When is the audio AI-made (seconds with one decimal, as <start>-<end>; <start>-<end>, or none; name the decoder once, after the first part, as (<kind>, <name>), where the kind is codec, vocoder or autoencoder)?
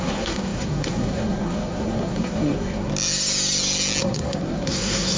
0.0-2.9 (codec, SNAC); 4.0-5.2